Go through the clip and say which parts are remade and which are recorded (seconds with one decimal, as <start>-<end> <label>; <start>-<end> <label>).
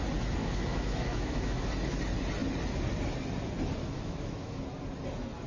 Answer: 0.0-0.4 recorded; 0.4-1.7 remade; 1.7-3.8 recorded; 3.8-4.6 remade; 4.6-5.5 recorded